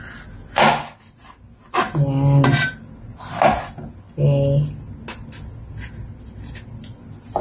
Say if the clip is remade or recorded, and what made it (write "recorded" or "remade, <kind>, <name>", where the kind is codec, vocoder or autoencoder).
recorded